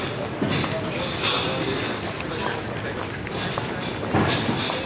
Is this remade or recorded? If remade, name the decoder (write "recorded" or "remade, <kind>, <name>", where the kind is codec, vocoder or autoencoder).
recorded